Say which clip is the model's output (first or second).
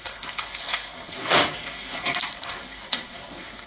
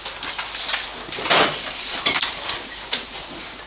first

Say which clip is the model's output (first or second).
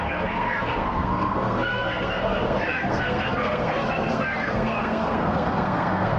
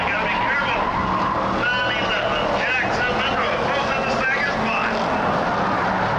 first